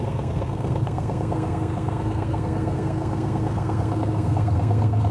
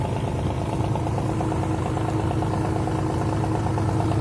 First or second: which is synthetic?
first